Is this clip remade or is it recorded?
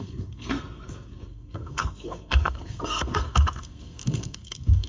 remade